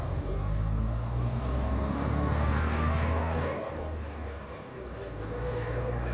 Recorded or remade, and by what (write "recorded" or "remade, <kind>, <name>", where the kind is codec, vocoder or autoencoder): remade, codec, DAC